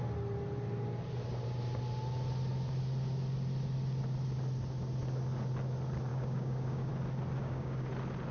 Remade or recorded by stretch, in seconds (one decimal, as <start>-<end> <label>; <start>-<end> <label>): 0.0-6.1 recorded; 6.1-6.9 remade; 6.9-7.4 recorded; 7.4-7.9 remade; 7.9-8.3 recorded